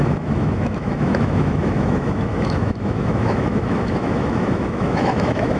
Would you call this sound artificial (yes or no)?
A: yes